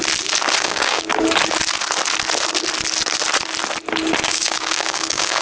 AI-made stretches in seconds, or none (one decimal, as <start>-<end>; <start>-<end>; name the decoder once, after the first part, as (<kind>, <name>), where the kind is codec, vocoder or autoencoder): 0.6-1.1 (codec, DAC); 4.3-5.4